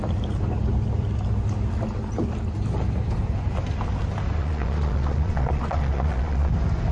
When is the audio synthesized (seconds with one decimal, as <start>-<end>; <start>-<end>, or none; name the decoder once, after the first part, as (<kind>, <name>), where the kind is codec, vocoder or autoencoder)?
4.4-6.5 (vocoder, Vocos)